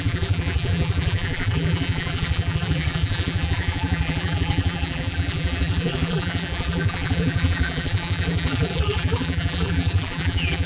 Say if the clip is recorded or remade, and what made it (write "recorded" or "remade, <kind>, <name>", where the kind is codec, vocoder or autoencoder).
remade, vocoder, BigVGAN v2